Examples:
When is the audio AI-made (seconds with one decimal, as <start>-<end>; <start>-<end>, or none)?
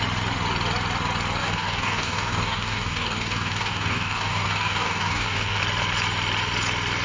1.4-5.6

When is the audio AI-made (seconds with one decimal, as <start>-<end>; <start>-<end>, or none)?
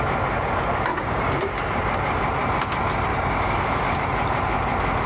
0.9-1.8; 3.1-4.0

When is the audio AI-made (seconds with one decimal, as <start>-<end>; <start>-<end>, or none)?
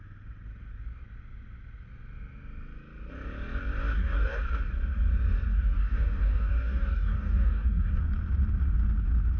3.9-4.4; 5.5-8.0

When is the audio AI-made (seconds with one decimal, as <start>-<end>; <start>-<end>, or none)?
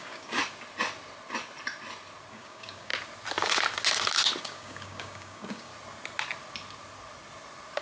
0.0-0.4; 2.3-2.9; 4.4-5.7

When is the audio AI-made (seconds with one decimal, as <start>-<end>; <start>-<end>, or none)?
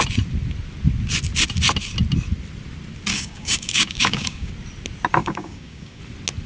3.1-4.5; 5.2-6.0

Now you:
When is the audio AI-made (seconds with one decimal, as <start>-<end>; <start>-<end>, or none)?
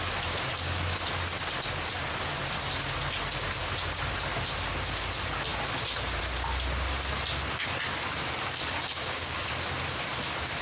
9.0-9.5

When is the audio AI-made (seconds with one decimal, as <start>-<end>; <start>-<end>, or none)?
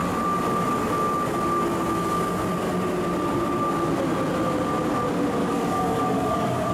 5.4-6.7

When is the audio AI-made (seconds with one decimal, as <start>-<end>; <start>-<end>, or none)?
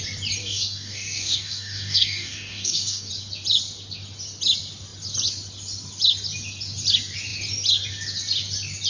0.4-3.1